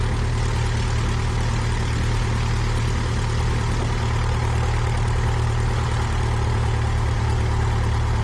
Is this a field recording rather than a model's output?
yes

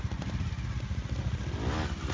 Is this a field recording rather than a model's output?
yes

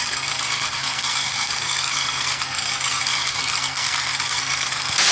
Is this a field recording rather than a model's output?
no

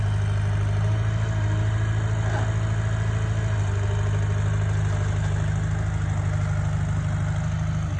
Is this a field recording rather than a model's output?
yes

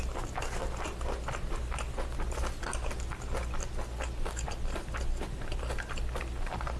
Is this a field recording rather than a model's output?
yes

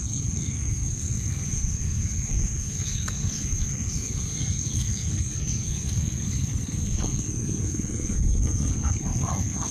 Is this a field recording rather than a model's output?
no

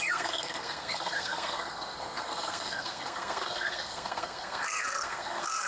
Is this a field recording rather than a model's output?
no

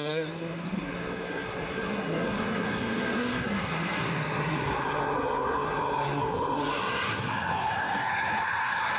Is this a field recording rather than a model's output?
no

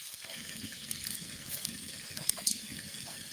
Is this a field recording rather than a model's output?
no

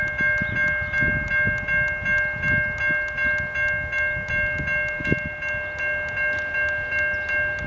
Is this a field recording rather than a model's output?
yes